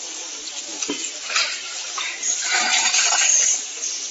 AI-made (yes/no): yes